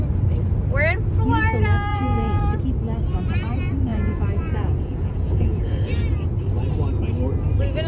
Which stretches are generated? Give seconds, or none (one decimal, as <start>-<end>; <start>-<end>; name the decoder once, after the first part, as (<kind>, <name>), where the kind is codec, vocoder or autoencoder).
1.9-2.4 (vocoder, Vocos); 3.9-5.9